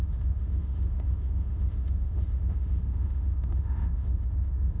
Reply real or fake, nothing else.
fake